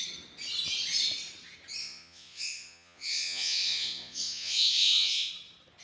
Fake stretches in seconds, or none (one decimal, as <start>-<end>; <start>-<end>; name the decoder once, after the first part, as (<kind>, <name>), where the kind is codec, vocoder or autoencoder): 1.8-5.3 (vocoder, Vocos)